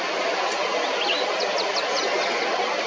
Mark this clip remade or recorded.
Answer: recorded